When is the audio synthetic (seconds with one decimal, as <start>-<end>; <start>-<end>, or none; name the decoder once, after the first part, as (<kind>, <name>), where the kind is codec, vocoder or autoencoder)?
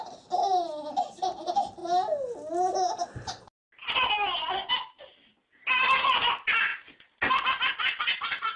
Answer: none